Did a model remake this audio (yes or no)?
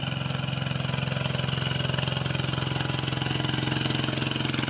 no